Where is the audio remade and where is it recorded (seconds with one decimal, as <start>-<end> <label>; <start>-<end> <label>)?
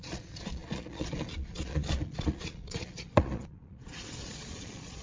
0.0-5.0 remade